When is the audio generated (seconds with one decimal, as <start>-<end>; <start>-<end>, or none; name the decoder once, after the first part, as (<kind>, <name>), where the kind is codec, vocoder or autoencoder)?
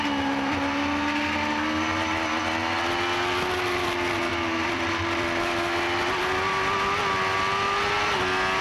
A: 4.3-5.4 (vocoder, BigVGAN v2)